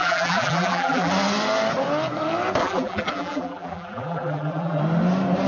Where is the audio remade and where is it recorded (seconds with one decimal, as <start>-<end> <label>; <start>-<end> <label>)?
0.0-1.1 remade; 1.1-2.6 recorded; 2.6-4.8 remade; 4.8-5.5 recorded

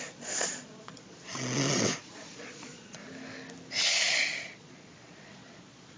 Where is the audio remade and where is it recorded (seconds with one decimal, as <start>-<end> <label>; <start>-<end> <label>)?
0.0-3.0 remade; 3.0-3.9 recorded; 3.9-6.0 remade

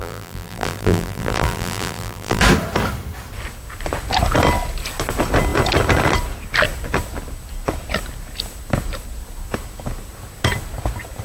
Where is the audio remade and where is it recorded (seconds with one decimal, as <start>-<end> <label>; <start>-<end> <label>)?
0.0-2.4 remade; 2.4-11.2 recorded